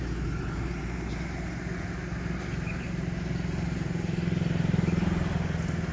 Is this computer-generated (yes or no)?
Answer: no